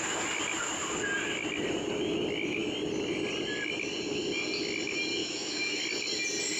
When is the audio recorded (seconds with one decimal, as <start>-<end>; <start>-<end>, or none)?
0.0-5.2; 5.8-6.6